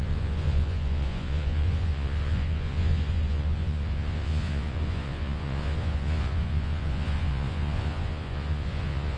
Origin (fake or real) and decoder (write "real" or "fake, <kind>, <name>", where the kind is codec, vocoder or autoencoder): fake, vocoder, Vocos